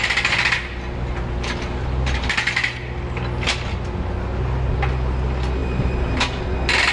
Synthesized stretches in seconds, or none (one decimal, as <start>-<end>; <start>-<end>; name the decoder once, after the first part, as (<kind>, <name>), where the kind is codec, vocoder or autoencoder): 5.6-6.4 (vocoder, BigVGAN v2)